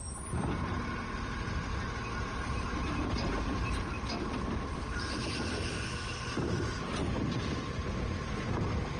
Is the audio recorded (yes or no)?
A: yes